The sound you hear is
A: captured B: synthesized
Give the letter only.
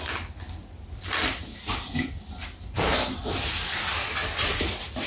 A